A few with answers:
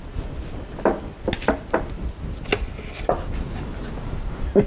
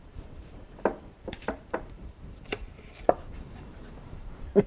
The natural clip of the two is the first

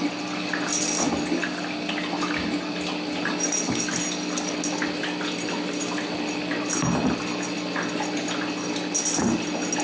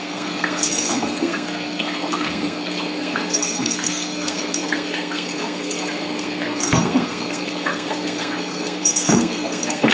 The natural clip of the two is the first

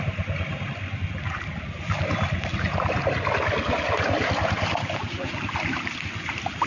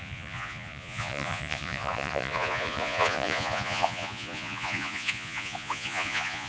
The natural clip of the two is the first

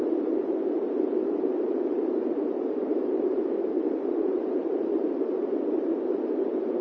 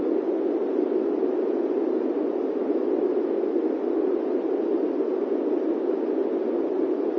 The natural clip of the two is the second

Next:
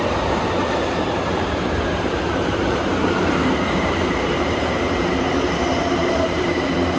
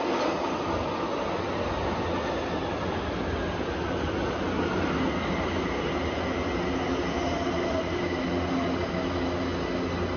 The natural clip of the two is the second